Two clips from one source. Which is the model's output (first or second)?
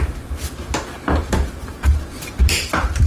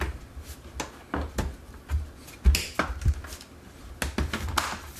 first